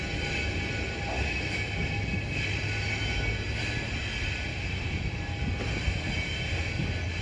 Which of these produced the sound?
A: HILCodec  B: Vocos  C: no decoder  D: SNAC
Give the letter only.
C